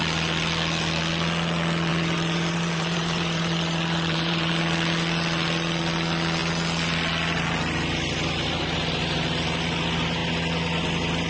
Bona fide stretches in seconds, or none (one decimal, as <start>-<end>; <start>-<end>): 0.0-1.9; 4.5-11.3